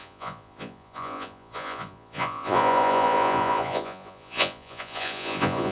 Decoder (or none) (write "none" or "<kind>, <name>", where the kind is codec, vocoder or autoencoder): vocoder, Vocos